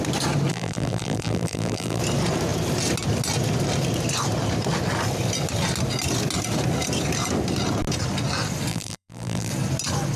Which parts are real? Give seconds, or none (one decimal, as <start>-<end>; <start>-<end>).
0.0-0.5; 2.0-8.7; 9.5-10.2